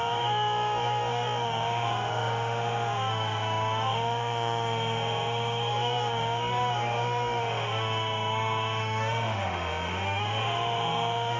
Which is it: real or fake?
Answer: fake